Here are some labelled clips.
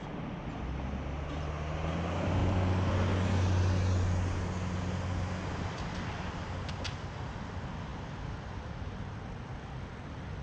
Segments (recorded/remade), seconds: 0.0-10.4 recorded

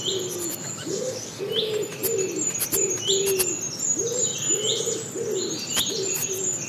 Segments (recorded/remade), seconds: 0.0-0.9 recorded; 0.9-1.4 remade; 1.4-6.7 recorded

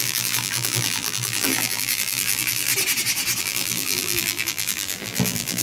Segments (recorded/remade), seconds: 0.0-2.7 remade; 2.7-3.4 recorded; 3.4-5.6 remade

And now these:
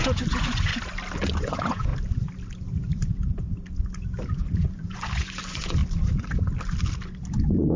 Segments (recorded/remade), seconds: 0.0-0.7 remade; 0.7-1.4 recorded; 1.4-1.9 remade; 1.9-4.7 recorded; 4.7-5.8 remade; 5.8-7.3 recorded; 7.3-7.8 remade

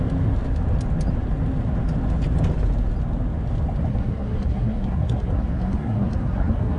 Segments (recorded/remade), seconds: 0.0-3.9 recorded; 3.9-6.8 remade

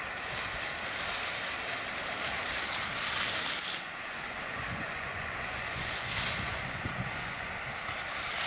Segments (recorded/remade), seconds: 0.0-3.7 recorded; 3.7-7.5 remade; 7.5-8.5 recorded

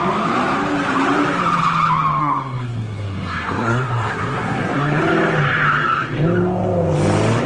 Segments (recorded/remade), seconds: 0.0-2.2 recorded; 2.2-5.0 remade; 5.0-7.5 recorded